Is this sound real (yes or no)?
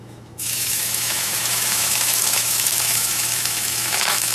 no